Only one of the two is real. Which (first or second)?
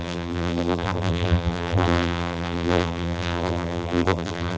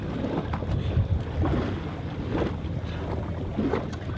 second